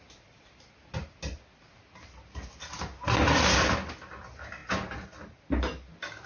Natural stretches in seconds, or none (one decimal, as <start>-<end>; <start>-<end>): 0.0-6.3